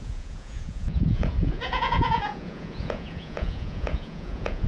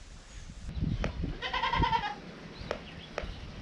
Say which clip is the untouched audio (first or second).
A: second